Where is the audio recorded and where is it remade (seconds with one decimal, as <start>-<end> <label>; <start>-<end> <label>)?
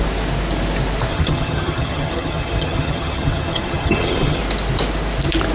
0.0-1.1 recorded; 1.1-4.4 remade; 4.4-5.5 recorded